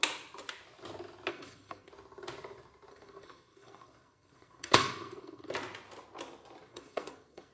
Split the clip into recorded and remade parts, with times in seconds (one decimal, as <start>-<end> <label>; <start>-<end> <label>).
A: 0.0-1.3 recorded; 1.3-1.9 remade; 1.9-2.9 recorded; 2.9-5.5 remade; 5.5-6.7 recorded; 6.7-7.5 remade